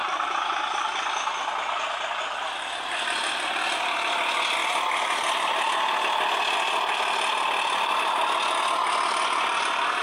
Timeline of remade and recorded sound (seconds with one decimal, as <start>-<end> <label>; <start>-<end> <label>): 0.0-10.0 recorded